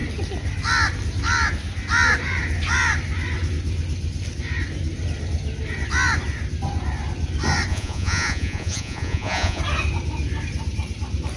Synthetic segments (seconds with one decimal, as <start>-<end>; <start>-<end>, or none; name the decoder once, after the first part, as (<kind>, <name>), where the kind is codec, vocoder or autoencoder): 7.7-9.6 (vocoder, Vocos)